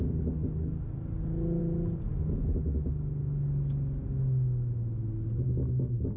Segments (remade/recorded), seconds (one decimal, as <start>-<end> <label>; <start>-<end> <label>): 0.0-6.2 recorded